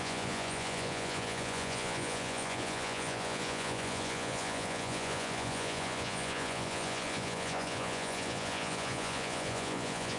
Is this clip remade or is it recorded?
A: remade